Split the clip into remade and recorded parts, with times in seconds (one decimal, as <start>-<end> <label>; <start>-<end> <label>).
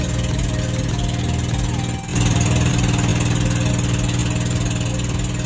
0.0-2.1 recorded; 2.1-2.7 remade; 2.7-5.5 recorded